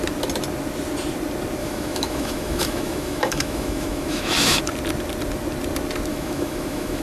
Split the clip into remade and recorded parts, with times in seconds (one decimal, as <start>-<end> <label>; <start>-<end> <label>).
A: 0.0-1.6 recorded; 1.6-4.6 remade; 4.6-6.1 recorded; 6.1-7.0 remade